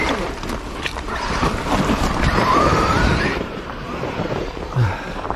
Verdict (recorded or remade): remade